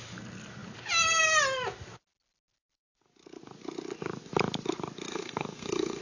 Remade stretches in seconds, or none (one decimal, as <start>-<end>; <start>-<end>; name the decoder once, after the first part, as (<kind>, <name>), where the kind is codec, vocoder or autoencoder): 5.1-6.0 (codec, SNAC)